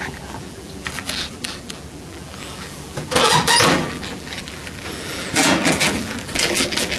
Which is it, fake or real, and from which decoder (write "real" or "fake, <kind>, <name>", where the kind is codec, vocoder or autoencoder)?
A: fake, vocoder, BigVGAN v2